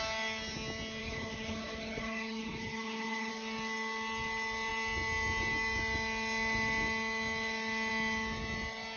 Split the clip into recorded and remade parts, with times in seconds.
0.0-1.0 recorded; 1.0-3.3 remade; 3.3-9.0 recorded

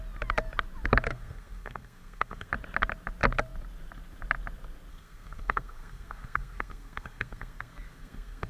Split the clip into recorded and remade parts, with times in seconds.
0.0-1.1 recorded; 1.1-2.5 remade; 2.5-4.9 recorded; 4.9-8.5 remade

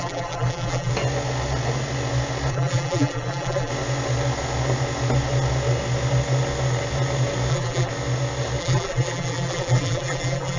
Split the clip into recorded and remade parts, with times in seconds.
0.0-0.9 remade; 0.9-2.5 recorded; 2.5-3.7 remade; 3.7-7.5 recorded; 7.5-7.9 remade; 7.9-8.6 recorded; 8.6-10.6 remade

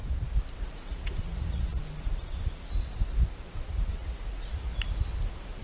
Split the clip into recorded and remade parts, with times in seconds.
0.0-0.6 recorded; 0.6-1.8 remade; 1.8-3.7 recorded; 3.7-4.7 remade; 4.7-5.6 recorded